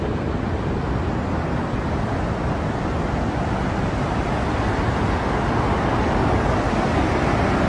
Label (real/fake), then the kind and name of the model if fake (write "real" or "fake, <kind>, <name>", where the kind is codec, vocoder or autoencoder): real